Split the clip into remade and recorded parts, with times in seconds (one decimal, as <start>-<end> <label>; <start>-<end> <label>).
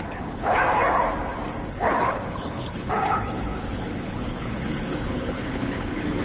0.0-0.6 remade; 0.6-1.7 recorded; 1.7-6.2 remade